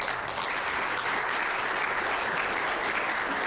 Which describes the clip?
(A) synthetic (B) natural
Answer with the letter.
B